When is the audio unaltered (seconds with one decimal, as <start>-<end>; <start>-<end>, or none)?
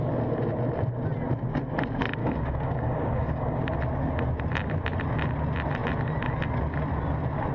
0.0-2.2; 3.6-7.5